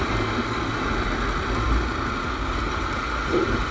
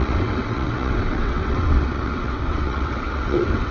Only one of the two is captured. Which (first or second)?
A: first